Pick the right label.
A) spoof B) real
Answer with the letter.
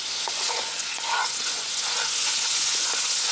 A